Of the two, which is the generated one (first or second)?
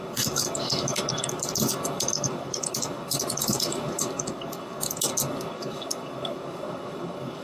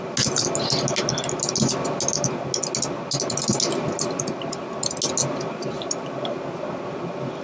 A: first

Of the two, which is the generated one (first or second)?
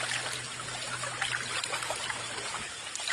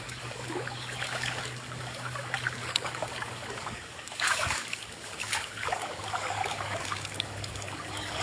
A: second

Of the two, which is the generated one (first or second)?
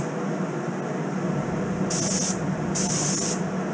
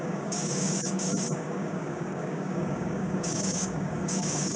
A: second